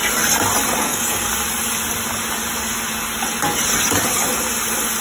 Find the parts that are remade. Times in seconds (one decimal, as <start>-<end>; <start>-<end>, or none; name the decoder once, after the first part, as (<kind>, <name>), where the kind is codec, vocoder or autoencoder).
0.8-1.3 (codec, SNAC)

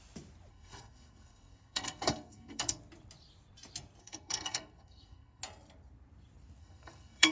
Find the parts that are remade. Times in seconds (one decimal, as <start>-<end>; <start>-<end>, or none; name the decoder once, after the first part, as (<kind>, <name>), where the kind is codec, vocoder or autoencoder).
0.5-2.8 (codec, SNAC); 4.0-5.4; 6.6-7.3

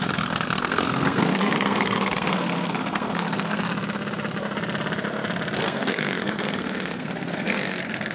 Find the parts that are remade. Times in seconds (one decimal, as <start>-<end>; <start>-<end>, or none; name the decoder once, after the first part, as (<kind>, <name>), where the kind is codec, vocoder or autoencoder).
0.0-3.6 (codec, SNAC); 5.6-8.1

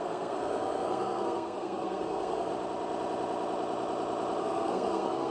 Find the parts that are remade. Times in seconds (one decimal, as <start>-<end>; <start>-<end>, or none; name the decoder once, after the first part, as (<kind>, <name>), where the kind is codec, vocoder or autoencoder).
0.0-2.5 (codec, SNAC); 4.4-5.3

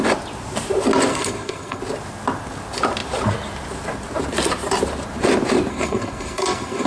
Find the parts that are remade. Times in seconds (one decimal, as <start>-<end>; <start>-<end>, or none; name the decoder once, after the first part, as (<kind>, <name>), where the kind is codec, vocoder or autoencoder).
1.1-1.8 (codec, SNAC); 5.7-6.9

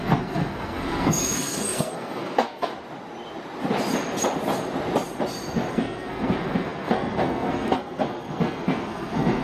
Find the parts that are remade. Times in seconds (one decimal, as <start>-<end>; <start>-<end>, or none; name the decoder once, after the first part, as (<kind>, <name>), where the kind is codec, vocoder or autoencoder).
0.0-2.7 (codec, SNAC); 5.7-9.4